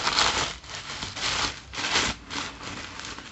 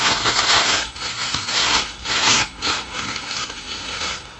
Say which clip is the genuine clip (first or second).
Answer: first